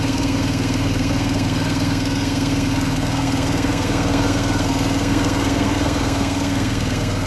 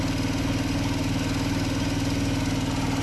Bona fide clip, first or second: second